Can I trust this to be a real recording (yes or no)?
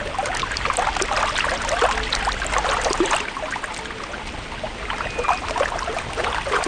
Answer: yes